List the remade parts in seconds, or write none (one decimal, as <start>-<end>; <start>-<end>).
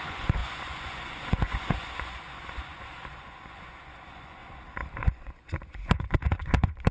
0.0-4.4; 5.0-6.9